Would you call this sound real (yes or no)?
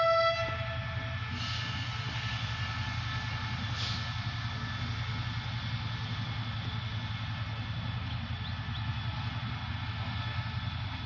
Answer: yes